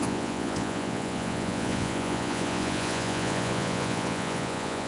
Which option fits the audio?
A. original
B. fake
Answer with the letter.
B